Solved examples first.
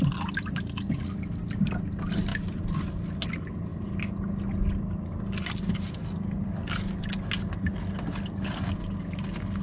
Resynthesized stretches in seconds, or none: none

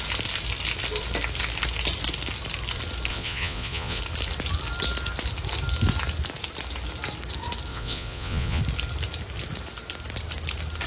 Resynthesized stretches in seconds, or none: 3.1-4.0 (vocoder, Vocos); 7.7-8.6

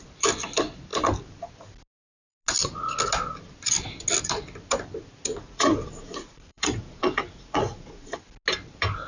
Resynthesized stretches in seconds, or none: 5.3-8.1 (vocoder, Vocos)

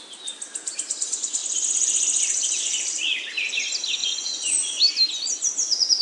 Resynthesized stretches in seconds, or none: 4.0-4.8 (vocoder, Vocos)

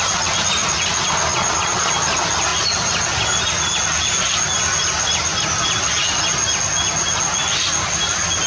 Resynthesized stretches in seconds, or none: 1.3-1.9 (vocoder, Vocos)

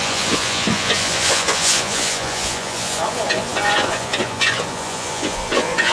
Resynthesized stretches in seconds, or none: 0.0-5.9 (vocoder, Vocos)

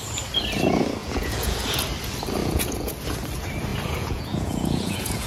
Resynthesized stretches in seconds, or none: 1.0-1.8 (vocoder, Vocos); 2.4-2.9; 3.7-5.3